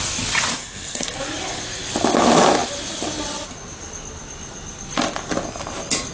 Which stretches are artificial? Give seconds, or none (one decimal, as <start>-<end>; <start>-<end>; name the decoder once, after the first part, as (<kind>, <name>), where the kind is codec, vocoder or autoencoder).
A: 0.6-1.2 (codec, SNAC)